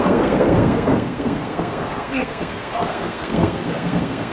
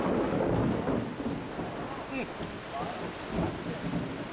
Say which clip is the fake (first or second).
first